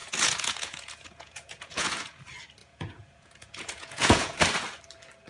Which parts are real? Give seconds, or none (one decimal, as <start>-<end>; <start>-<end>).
2.2-2.6; 4.4-5.3